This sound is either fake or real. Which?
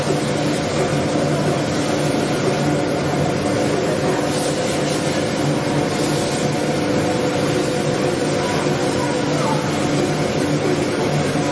real